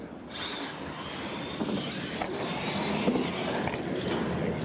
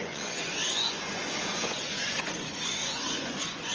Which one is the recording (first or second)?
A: first